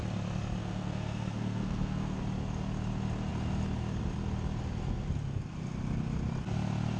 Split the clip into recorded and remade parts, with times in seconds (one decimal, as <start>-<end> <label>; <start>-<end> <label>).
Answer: 0.0-0.6 recorded; 0.6-2.2 remade; 2.2-7.0 recorded